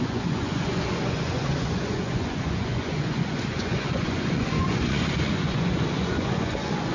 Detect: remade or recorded remade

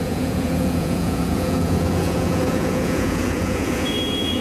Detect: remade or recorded remade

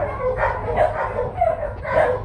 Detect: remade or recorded recorded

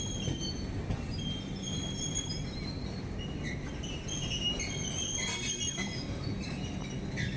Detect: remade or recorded recorded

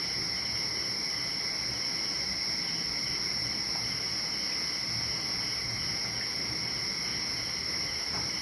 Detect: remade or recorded recorded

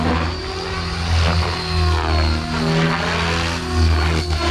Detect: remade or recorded recorded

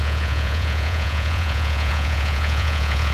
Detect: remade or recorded remade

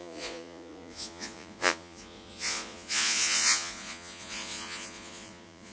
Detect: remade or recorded remade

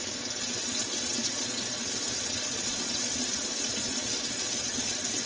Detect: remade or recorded remade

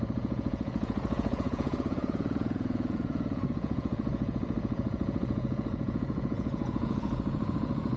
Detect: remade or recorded remade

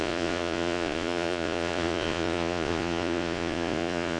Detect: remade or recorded remade